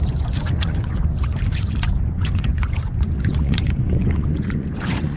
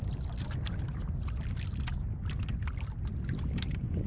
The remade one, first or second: first